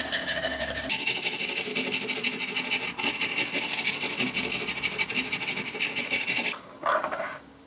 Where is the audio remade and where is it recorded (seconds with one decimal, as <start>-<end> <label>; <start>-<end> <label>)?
0.0-1.7 remade; 1.7-6.0 recorded; 6.0-7.7 remade